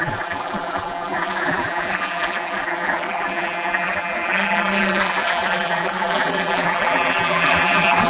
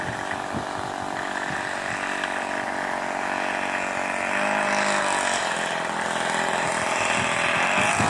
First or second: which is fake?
first